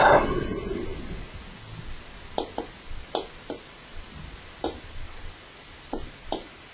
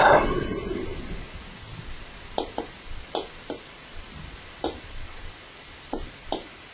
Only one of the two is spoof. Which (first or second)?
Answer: second